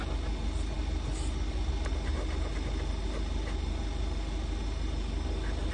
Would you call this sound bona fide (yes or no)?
yes